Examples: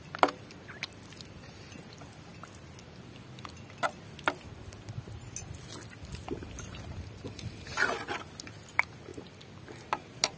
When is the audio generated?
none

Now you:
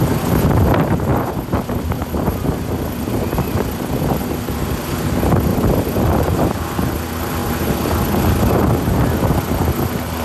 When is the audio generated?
1.1-4.7 (vocoder, BigVGAN v2); 5.5-6.9

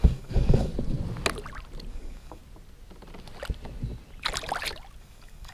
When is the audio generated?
0.0-0.7 (codec, DAC); 1.9-2.4; 5.0-5.5

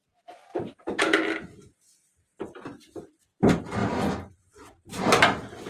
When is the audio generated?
0.5-1.0 (vocoder, BigVGAN v2); 2.3-3.2; 3.8-5.2

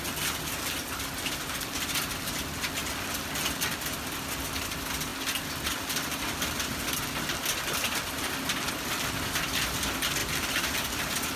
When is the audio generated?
none

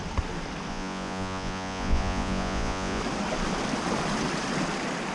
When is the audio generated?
0.7-3.0 (vocoder, Vocos)

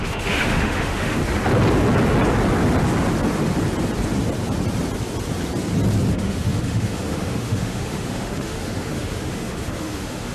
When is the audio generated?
0.0-1.2 (autoencoder, DAC-VAE); 6.1-10.3

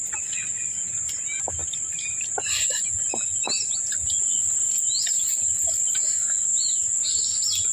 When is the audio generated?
none